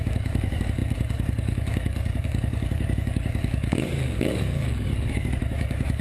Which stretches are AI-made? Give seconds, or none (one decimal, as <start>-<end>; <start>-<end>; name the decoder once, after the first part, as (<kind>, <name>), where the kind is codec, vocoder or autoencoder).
0.0-6.0 (codec, DAC)